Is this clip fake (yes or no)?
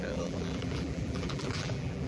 yes